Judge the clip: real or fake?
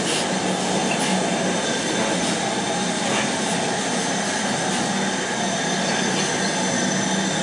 real